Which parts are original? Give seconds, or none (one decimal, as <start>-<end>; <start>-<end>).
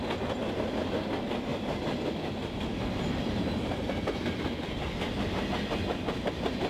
0.0-6.7